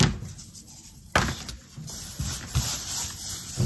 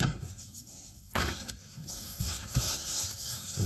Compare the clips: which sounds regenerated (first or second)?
second